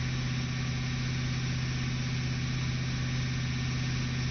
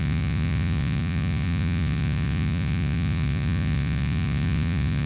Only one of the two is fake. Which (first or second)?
second